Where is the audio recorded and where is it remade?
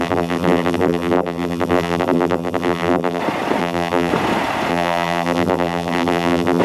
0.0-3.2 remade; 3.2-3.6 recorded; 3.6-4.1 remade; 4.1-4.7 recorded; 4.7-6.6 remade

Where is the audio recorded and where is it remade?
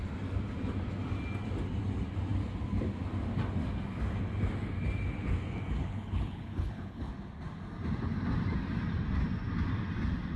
0.0-5.8 recorded; 5.8-7.1 remade; 7.1-10.4 recorded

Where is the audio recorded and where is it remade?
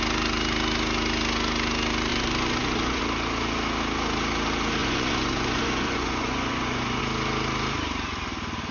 0.0-2.1 recorded; 2.1-3.0 remade; 3.0-4.8 recorded; 4.8-7.0 remade; 7.0-8.7 recorded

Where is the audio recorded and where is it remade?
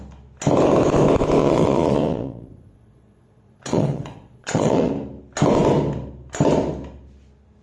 0.0-1.4 recorded; 1.4-4.9 remade; 4.9-7.6 recorded